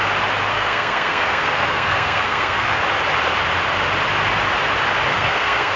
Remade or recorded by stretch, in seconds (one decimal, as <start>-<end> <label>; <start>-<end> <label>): 0.0-0.5 recorded; 0.5-2.8 remade; 2.8-5.1 recorded; 5.1-5.8 remade